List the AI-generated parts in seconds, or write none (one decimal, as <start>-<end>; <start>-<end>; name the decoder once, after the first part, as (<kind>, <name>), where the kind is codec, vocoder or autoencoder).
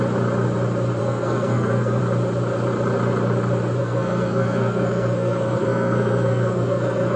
1.0-2.0 (codec, SNAC); 3.8-7.2